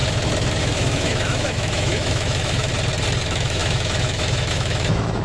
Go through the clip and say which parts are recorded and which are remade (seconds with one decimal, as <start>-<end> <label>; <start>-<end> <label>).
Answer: 0.0-0.6 recorded; 0.6-2.7 remade; 2.7-3.2 recorded; 3.2-5.2 remade